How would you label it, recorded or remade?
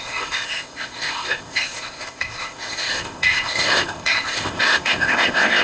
remade